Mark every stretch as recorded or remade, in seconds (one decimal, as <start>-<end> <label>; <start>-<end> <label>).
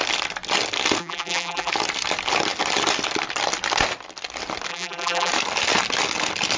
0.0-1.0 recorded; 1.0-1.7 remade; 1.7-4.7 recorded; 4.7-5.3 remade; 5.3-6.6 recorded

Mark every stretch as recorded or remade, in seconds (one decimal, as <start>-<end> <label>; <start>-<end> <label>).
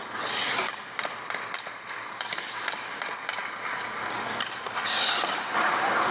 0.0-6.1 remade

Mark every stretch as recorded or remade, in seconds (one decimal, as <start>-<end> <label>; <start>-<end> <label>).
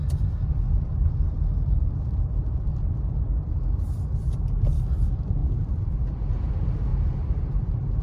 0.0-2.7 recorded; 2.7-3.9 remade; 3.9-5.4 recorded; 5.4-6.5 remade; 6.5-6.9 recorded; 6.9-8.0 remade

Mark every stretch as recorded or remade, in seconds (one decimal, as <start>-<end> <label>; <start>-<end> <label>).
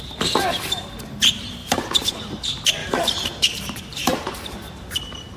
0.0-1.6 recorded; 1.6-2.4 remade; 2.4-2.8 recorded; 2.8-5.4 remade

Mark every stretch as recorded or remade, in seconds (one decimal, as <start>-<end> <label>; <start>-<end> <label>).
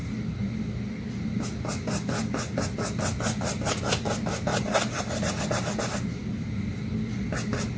0.0-7.8 recorded